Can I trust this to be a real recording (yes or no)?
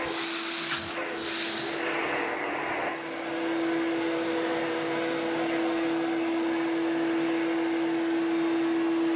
yes